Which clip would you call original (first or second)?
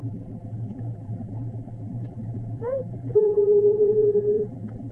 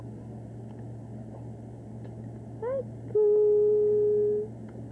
second